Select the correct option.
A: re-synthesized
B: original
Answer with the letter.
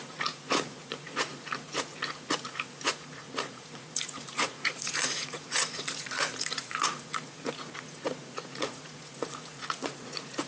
A